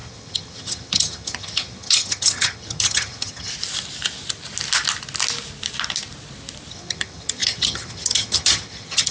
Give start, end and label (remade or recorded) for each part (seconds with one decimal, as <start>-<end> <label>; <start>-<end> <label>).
0.0-3.5 remade; 3.5-6.7 recorded; 6.7-9.1 remade